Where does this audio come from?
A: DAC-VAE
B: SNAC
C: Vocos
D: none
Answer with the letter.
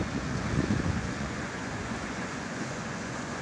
C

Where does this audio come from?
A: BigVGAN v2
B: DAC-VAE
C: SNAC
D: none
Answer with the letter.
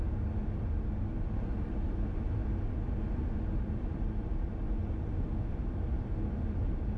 D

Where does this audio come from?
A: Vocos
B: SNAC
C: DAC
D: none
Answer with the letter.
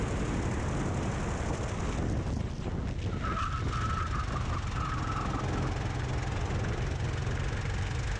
D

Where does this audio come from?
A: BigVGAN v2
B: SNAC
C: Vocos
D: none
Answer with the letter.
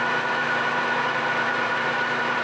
A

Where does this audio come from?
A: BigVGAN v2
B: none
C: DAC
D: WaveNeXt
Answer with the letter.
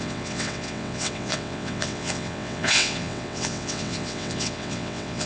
D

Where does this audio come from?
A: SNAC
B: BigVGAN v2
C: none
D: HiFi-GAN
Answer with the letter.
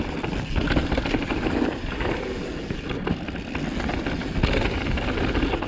C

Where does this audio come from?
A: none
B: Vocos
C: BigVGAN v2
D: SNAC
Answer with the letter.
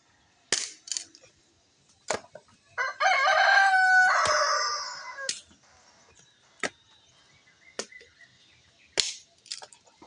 A